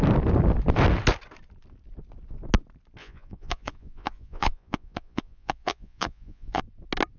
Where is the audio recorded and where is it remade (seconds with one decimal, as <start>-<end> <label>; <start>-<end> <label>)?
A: 0.0-3.0 recorded; 3.0-6.6 remade; 6.6-7.2 recorded